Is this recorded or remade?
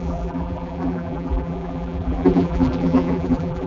remade